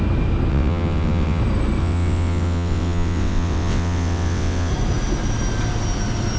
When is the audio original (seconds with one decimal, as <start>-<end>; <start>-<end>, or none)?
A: 0.0-0.5; 1.4-1.8; 4.7-6.4